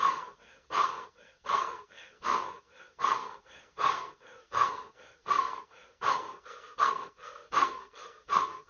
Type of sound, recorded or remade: remade